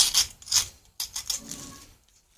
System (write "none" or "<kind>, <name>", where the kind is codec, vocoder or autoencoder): none